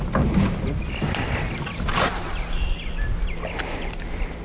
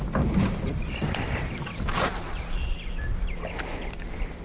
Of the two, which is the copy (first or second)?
second